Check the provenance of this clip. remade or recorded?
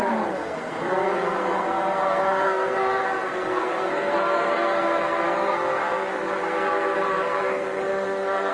remade